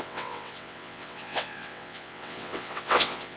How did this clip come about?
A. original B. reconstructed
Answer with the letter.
B